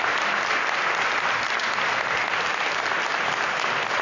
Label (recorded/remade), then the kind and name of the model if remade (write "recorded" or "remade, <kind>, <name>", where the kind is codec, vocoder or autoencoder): recorded